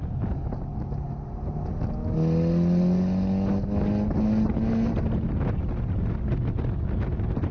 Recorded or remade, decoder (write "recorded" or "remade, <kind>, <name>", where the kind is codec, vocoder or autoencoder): recorded